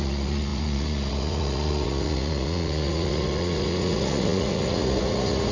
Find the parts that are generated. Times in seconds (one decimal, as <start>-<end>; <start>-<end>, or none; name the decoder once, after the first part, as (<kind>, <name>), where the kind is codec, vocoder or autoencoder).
0.0-5.5 (vocoder, Vocos)